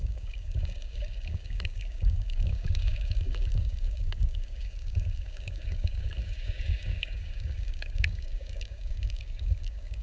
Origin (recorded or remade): remade